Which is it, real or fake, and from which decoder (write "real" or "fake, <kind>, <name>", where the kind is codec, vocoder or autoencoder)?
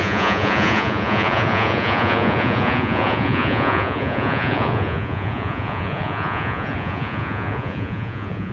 fake, vocoder, Vocos